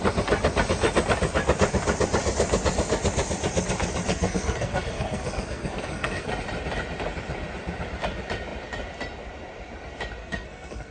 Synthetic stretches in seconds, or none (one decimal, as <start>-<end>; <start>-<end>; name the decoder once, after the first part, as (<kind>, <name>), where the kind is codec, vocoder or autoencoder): 4.1-6.3 (codec, SNAC); 10.2-10.9